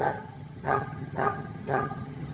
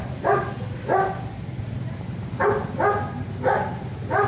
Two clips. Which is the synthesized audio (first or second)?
first